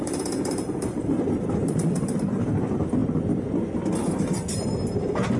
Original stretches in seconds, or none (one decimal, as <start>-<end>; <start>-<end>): 3.0-4.5